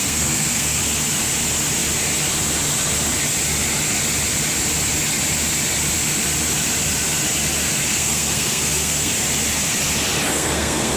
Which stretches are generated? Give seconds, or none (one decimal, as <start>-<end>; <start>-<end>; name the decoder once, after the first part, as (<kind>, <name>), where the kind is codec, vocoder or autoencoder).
0.0-0.8 (codec, SNAC); 7.9-9.1; 10.3-11.0